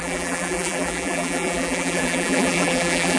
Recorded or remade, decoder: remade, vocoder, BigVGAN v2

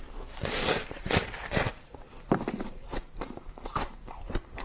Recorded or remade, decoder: remade, vocoder, BigVGAN v2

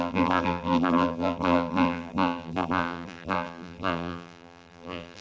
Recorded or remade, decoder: remade, vocoder, BigVGAN v2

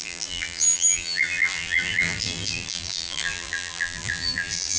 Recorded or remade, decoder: remade, vocoder, BigVGAN v2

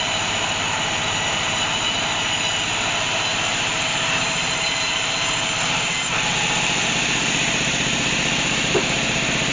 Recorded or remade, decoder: remade, vocoder, BigVGAN v2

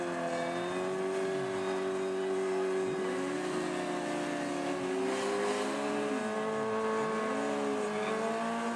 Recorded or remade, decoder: recorded